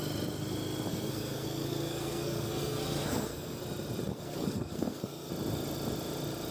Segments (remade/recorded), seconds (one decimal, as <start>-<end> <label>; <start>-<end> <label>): 0.0-0.9 recorded; 0.9-3.6 remade; 3.6-4.1 recorded; 4.1-5.3 remade; 5.3-6.5 recorded